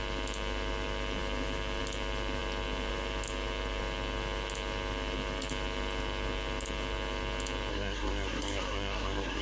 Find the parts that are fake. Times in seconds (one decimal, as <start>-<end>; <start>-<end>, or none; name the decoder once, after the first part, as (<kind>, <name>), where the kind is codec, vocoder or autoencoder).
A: 7.7-9.4 (codec, SNAC)

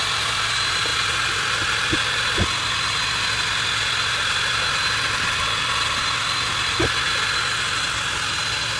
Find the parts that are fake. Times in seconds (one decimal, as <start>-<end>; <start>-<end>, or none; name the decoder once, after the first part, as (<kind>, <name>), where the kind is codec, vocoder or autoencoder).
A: none